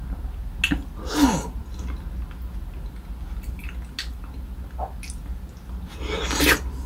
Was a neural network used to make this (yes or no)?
no